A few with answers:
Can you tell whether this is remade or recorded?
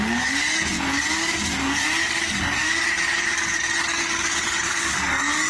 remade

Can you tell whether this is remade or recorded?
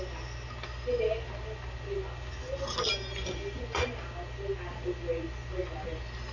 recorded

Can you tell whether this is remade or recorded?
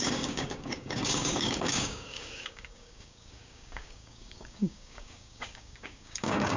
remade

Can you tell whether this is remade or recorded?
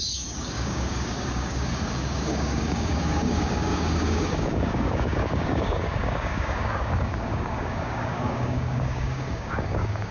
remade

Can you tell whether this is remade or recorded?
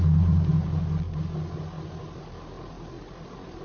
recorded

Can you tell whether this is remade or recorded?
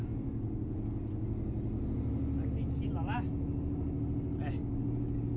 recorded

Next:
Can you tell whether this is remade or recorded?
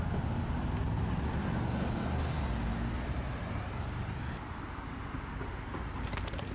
recorded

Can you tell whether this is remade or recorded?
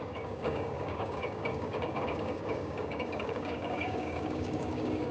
remade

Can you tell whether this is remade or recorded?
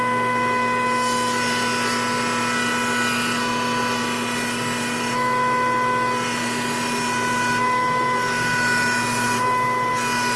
recorded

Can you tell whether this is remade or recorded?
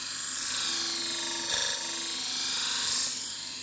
recorded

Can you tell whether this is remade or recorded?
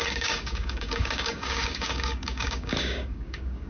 remade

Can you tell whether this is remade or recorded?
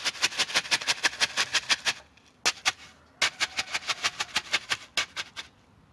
recorded